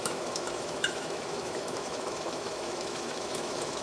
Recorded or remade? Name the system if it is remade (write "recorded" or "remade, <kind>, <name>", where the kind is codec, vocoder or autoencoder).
remade, autoencoder, DAC-VAE